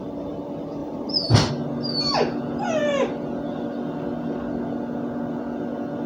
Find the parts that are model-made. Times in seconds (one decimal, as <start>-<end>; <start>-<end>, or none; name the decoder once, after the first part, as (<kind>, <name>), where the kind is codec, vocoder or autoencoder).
0.8-1.5 (vocoder, BigVGAN v2)